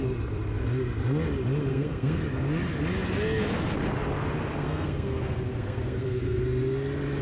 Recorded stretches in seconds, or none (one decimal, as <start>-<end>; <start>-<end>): 0.0-1.7; 2.2-4.6; 6.4-7.2